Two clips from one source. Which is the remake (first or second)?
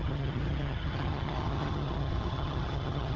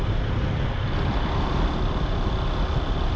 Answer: first